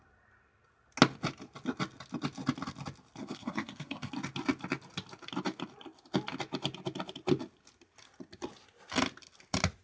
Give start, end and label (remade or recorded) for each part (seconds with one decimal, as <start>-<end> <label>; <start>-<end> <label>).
0.0-3.2 recorded; 3.2-4.1 remade; 4.1-9.8 recorded

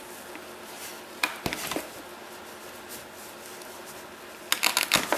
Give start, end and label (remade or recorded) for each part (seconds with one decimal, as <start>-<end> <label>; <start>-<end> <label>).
0.0-5.2 recorded

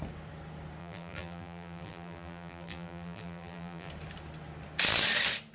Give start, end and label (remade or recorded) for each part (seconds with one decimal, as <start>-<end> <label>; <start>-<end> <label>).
0.0-0.8 recorded; 0.8-3.9 remade; 3.9-5.5 recorded

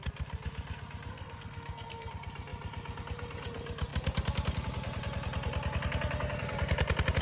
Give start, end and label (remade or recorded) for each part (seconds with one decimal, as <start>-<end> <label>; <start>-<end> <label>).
0.0-1.1 recorded; 1.1-2.1 remade; 2.1-7.2 recorded